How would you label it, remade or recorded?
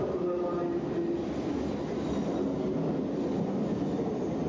recorded